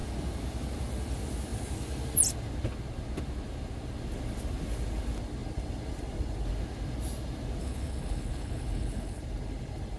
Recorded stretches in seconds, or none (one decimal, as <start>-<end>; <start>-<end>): 0.0-7.6; 9.2-10.0